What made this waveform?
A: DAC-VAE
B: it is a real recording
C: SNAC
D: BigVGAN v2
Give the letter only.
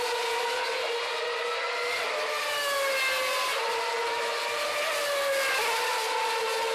B